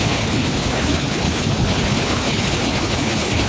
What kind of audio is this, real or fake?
fake